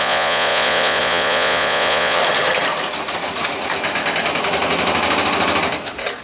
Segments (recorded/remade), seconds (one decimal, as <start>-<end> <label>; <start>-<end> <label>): 0.0-2.2 remade; 2.2-6.2 recorded